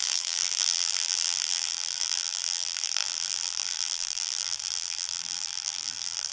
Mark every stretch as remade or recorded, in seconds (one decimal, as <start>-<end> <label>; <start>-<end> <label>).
0.0-6.3 remade

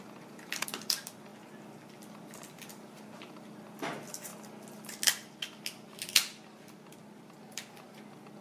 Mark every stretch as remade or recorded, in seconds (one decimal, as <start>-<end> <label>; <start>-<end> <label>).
0.0-8.4 recorded